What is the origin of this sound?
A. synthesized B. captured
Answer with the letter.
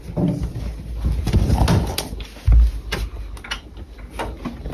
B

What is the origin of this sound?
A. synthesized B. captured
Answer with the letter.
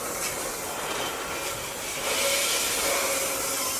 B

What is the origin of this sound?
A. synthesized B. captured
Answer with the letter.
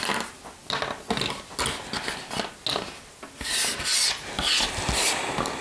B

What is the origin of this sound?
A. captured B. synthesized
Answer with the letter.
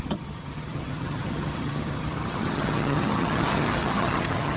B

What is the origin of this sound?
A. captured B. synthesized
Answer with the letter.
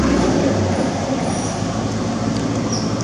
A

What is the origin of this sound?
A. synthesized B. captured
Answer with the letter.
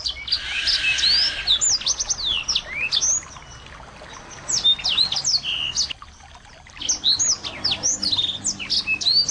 B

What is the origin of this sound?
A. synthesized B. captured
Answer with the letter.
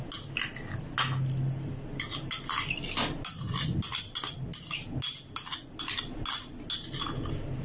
B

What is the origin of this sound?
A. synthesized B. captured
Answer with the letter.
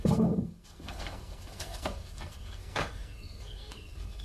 A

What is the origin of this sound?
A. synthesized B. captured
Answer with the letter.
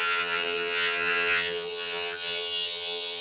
A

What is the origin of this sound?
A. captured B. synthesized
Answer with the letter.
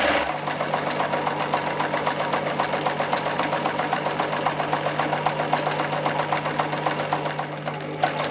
A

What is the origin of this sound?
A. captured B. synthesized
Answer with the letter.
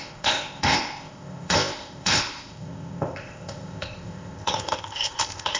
B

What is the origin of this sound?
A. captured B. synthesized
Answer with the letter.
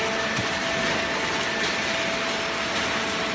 A